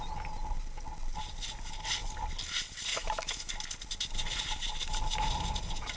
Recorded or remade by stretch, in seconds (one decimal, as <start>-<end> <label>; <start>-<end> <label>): 0.0-2.9 recorded; 2.9-3.5 remade; 3.5-6.0 recorded